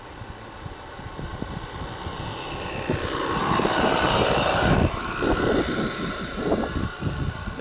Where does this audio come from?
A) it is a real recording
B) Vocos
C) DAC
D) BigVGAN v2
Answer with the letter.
A